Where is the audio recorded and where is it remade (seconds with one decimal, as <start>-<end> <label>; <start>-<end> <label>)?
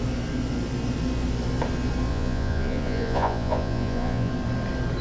0.0-2.1 recorded; 2.1-4.3 remade; 4.3-5.0 recorded